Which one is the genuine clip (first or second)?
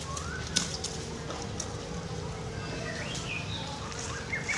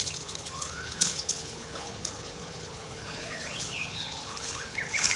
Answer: first